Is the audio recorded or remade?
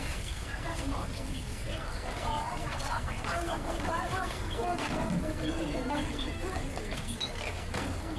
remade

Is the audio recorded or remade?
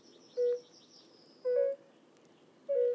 recorded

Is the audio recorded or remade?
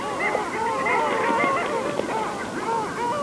recorded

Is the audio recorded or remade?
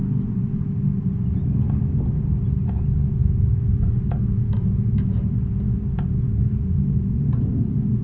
recorded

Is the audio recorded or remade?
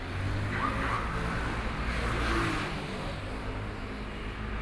recorded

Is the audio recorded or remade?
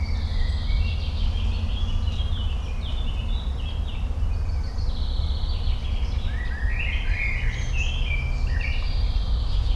recorded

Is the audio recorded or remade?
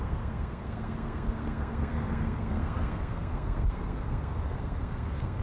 remade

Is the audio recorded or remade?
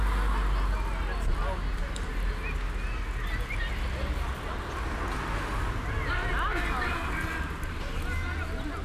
recorded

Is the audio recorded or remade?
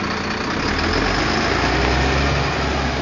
recorded